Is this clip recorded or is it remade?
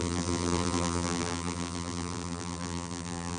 remade